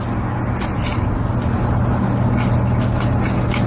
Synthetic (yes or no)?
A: no